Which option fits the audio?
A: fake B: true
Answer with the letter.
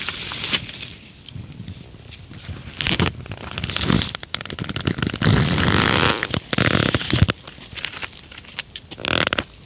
B